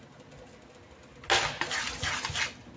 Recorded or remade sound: recorded